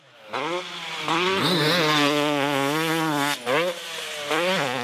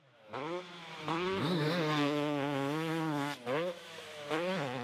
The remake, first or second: second